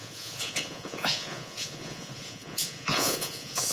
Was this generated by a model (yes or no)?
yes